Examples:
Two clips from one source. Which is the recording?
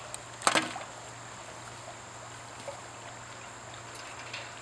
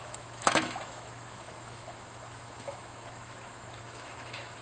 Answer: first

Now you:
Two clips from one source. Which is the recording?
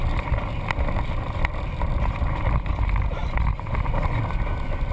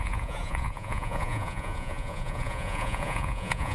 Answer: first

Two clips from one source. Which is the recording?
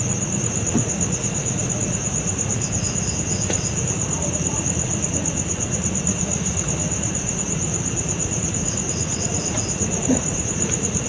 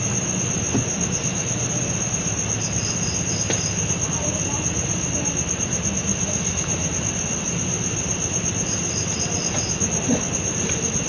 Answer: second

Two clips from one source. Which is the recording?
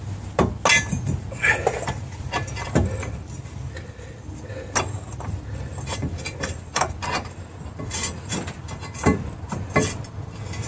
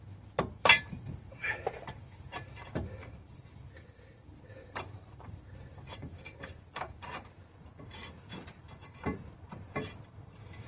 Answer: first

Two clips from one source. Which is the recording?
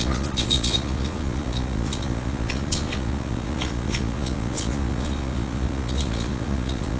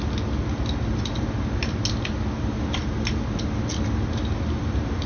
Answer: second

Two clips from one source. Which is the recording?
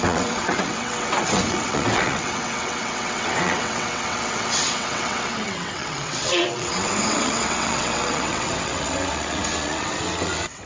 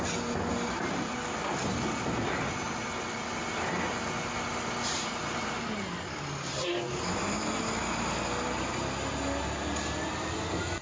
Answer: second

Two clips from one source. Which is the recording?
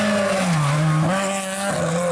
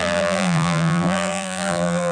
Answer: first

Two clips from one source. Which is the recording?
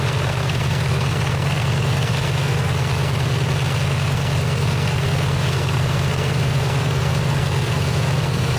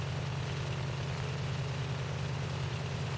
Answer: second